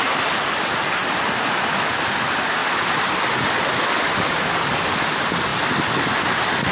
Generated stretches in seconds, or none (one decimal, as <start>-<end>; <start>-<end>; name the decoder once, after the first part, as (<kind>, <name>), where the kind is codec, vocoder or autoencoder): none